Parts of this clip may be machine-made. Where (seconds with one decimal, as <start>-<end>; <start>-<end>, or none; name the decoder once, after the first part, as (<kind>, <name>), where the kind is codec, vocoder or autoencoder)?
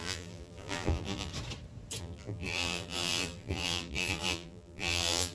0.0-1.3 (vocoder, BigVGAN v2); 2.0-5.3